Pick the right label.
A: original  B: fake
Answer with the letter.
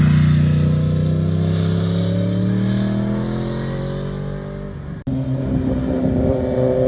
A